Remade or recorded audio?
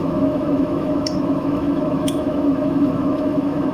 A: remade